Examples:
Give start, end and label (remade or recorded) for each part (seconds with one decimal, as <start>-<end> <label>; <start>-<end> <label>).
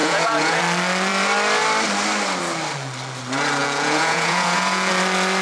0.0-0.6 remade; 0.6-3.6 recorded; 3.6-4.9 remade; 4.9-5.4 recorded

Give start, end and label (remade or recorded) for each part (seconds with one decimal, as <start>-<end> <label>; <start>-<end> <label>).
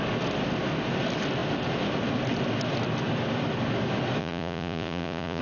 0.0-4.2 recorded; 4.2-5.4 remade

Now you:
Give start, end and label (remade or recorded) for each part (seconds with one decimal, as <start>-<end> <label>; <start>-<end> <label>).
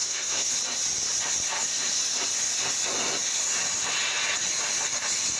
0.0-0.5 remade; 0.5-5.4 recorded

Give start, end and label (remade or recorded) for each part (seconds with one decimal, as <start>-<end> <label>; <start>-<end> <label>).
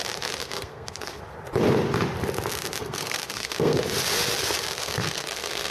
0.0-0.4 recorded; 0.4-1.2 remade; 1.2-2.8 recorded; 2.8-3.8 remade; 3.8-4.8 recorded; 4.8-5.7 remade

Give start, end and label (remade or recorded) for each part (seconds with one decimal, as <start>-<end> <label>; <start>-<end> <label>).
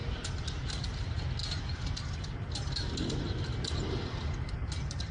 0.0-5.1 recorded